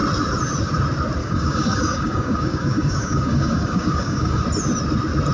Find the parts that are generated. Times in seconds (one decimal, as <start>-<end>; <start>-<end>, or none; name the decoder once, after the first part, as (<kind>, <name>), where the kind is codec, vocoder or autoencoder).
1.2-4.4 (codec, DAC)